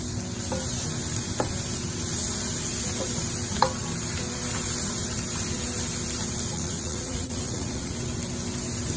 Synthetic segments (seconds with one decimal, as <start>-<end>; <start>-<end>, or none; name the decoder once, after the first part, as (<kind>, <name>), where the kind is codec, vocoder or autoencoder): 6.5-7.9 (vocoder, Vocos)